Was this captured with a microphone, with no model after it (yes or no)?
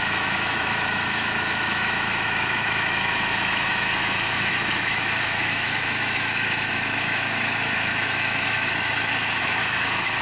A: no